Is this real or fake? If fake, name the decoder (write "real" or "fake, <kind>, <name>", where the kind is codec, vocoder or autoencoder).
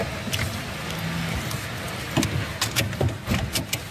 real